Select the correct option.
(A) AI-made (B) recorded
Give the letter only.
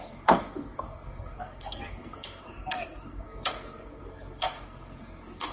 A